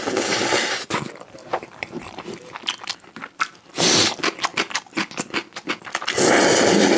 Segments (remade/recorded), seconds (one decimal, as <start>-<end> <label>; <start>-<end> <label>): 0.0-1.5 recorded; 1.5-2.2 remade; 2.2-7.0 recorded